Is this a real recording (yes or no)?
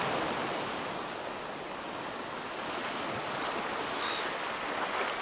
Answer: yes